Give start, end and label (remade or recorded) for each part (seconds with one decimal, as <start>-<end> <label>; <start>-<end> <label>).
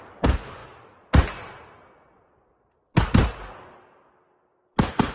0.0-5.1 recorded